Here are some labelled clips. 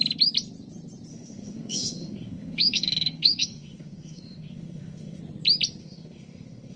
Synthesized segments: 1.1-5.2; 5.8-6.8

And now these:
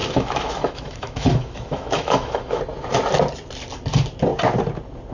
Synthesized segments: 0.0-2.6

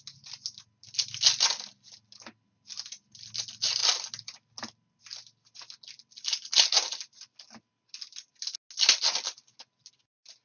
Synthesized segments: none